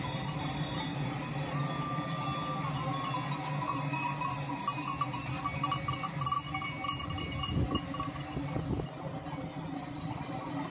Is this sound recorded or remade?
recorded